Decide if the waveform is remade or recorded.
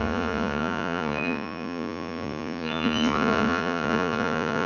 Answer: remade